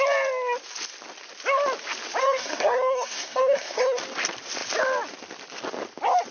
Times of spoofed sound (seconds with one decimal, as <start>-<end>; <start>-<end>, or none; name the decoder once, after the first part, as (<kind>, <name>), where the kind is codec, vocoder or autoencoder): 2.2-4.0 (codec, SNAC)